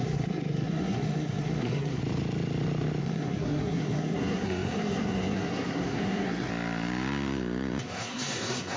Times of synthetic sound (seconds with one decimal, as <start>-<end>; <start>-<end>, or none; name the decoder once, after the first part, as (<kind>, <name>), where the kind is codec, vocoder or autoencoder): 0.0-2.0 (codec, SNAC); 3.0-6.5; 7.8-8.8